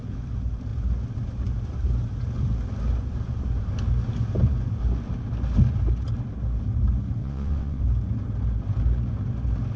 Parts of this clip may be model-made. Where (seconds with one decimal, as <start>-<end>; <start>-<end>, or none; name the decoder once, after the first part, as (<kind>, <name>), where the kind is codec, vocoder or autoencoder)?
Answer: 7.2-7.8 (vocoder, WaveNeXt)